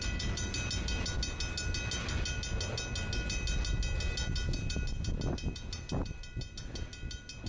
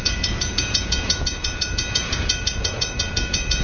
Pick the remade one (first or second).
second